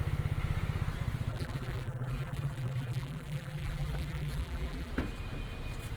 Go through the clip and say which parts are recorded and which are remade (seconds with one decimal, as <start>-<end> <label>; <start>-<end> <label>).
0.0-1.3 recorded; 1.3-4.9 remade; 4.9-6.0 recorded